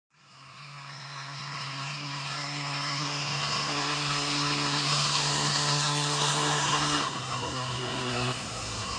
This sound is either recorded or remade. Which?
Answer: remade